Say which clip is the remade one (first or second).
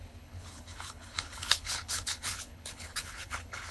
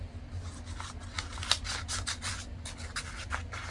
first